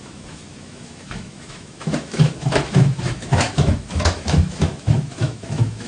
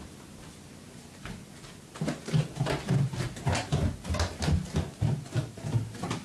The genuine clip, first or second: second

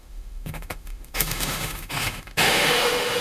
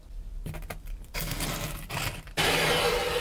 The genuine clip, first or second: second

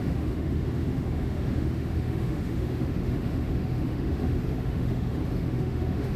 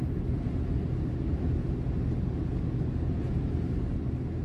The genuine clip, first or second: second